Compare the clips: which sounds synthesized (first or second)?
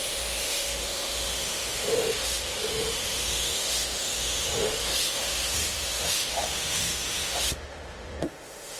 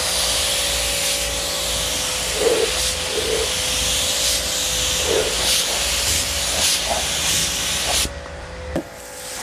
first